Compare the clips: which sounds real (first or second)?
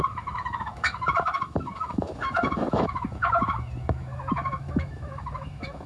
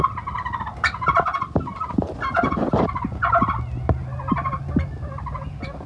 second